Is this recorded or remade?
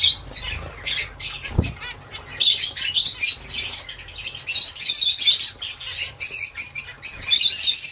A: recorded